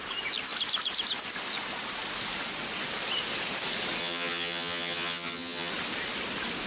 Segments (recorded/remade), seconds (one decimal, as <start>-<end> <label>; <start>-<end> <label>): 0.0-4.0 recorded; 4.0-5.7 remade; 5.7-6.7 recorded